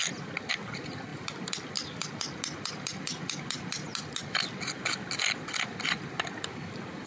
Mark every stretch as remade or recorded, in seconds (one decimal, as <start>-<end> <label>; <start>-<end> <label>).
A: 0.0-7.1 recorded